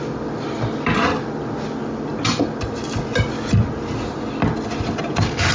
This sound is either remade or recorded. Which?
recorded